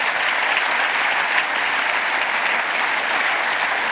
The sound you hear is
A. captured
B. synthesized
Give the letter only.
A